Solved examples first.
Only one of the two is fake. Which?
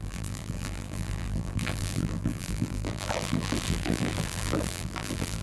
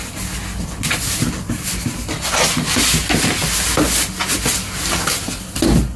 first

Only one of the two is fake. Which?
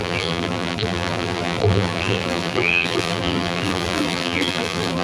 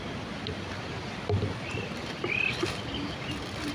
first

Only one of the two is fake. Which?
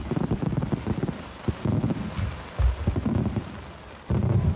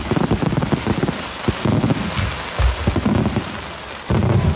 first